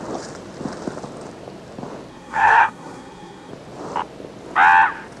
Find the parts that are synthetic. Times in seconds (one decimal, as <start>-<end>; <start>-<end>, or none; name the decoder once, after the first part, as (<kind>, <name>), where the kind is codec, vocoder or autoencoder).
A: 2.1-3.5 (codec, SNAC)